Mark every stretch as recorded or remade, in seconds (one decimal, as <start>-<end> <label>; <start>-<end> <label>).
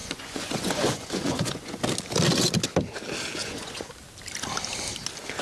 0.0-1.8 remade; 1.8-3.4 recorded; 3.4-3.9 remade; 3.9-5.4 recorded